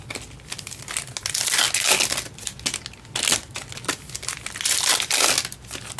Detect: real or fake real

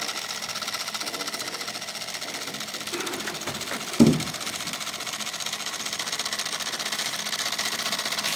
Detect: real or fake real